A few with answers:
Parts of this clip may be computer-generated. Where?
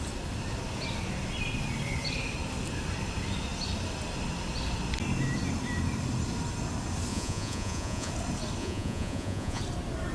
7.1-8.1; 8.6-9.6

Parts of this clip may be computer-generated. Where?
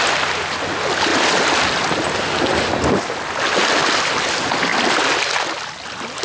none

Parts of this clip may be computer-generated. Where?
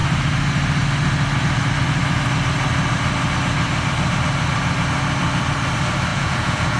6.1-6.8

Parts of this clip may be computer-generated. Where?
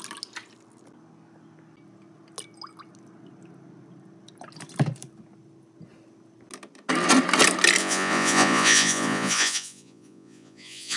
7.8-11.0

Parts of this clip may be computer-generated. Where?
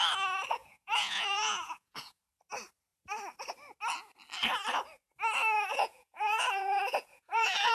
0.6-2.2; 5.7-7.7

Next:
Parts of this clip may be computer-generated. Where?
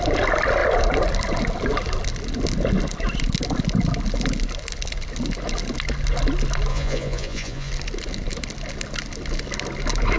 6.7-7.7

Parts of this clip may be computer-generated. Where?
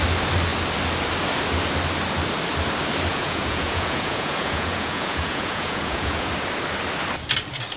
3.1-6.3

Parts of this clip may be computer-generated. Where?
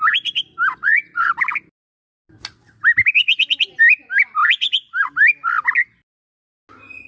0.8-1.3